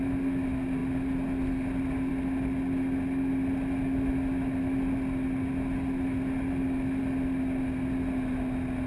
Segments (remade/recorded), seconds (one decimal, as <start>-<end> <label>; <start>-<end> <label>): 0.0-8.9 recorded